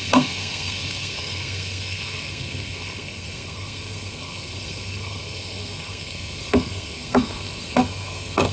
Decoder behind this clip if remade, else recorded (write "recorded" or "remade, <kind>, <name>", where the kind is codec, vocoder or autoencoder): remade, codec, SNAC